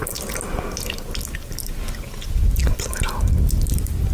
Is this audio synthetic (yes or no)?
no